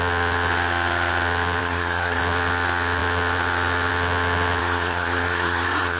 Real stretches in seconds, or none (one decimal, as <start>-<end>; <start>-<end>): 0.0-1.6; 2.2-4.6